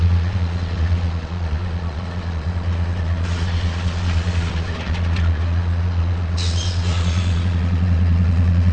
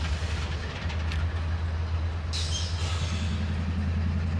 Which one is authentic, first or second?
second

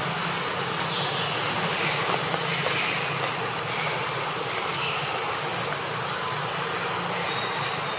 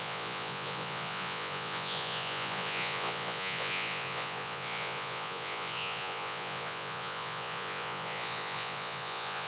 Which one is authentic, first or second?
first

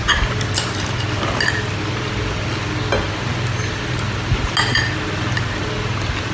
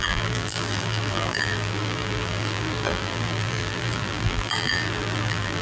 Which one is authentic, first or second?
first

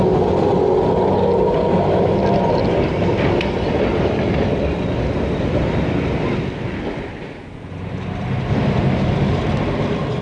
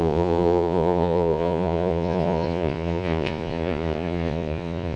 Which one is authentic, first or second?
first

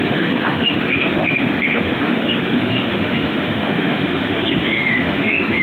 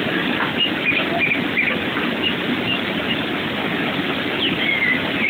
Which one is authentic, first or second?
second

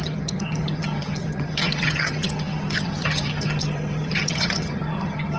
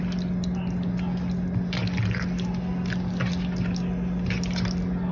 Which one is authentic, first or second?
second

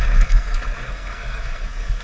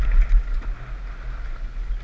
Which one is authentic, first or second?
second